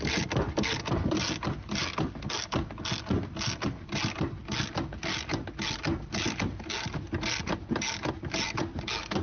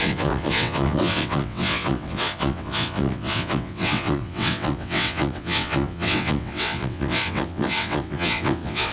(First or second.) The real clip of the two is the first